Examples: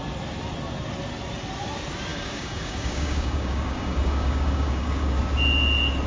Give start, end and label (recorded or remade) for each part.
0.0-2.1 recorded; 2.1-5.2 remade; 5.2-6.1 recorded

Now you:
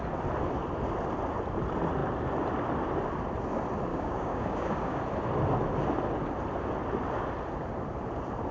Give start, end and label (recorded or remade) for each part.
0.0-3.9 recorded; 3.9-5.0 remade; 5.0-8.5 recorded

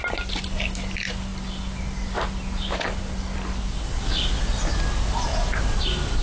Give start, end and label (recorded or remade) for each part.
0.0-6.2 recorded

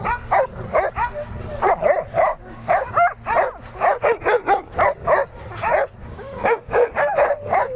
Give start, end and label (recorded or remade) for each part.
0.0-2.1 recorded; 2.1-2.9 remade; 2.9-6.0 recorded; 6.0-7.8 remade

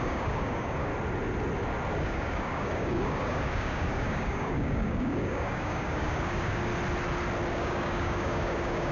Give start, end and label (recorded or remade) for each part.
0.0-0.9 remade; 0.9-2.0 recorded; 2.0-6.7 remade; 6.7-7.5 recorded; 7.5-8.9 remade